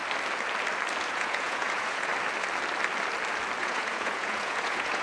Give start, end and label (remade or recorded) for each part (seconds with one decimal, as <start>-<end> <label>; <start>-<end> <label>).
0.0-1.1 recorded; 1.1-2.1 remade; 2.1-3.6 recorded; 3.6-5.0 remade